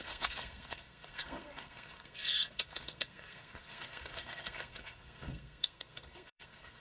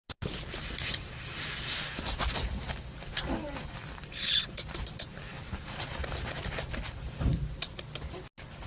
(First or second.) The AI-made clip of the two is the first